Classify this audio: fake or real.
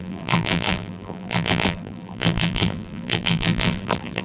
fake